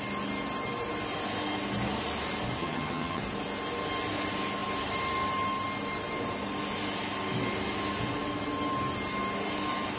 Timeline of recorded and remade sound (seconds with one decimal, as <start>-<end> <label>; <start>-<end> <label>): 0.0-2.6 recorded; 2.6-3.2 remade; 3.2-10.0 recorded